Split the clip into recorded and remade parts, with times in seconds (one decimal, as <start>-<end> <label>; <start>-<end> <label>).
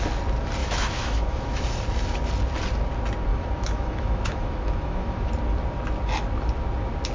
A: 0.0-0.6 recorded; 0.6-1.6 remade; 1.6-3.3 recorded; 3.3-5.3 remade; 5.3-7.1 recorded